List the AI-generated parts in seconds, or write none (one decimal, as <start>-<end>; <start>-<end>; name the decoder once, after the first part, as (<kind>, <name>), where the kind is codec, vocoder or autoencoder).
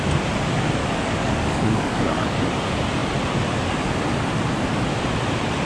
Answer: 0.8-2.5 (codec, DAC)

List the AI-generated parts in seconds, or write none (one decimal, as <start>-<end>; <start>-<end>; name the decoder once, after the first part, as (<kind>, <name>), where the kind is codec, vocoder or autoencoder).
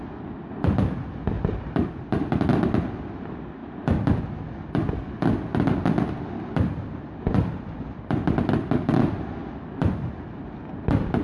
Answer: none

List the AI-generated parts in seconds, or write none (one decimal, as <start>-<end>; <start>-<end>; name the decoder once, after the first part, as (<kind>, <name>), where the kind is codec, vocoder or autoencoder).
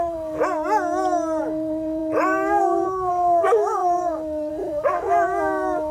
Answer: 0.0-0.4 (codec, DAC); 1.4-5.9